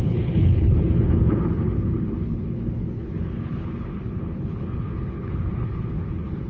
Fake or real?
fake